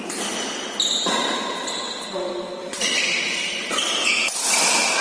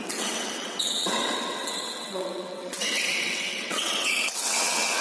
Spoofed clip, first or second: second